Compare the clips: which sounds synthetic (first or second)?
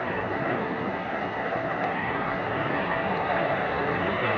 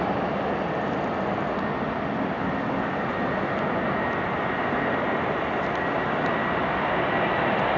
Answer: first